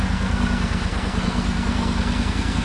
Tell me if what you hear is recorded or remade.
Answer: remade